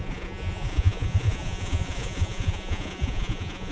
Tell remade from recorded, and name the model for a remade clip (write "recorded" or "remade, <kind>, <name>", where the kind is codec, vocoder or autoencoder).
remade, vocoder, Vocos